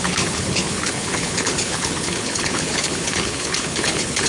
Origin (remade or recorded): remade